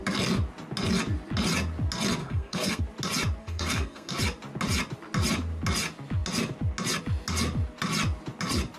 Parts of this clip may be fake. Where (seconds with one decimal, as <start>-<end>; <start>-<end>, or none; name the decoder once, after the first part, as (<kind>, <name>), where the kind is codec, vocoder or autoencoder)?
2.2-2.8 (codec, SNAC); 3.4-4.1